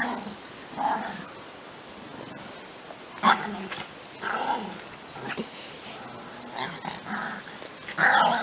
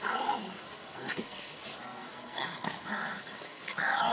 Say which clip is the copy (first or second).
second